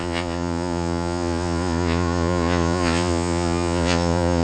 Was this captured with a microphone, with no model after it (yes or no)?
no